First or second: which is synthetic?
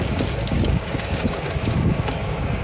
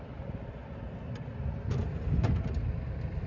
first